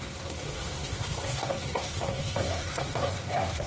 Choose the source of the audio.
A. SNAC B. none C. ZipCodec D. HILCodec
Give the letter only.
A